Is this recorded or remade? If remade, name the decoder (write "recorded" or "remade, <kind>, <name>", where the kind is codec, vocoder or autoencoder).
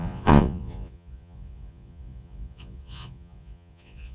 remade, vocoder, Vocos